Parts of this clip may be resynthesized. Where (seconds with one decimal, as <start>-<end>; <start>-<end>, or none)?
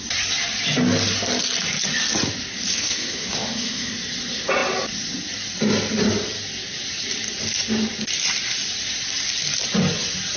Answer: 2.7-3.9